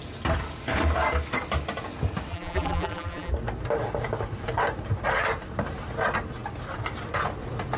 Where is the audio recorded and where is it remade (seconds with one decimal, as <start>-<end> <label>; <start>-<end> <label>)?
0.0-2.3 recorded; 2.3-3.3 remade; 3.3-7.8 recorded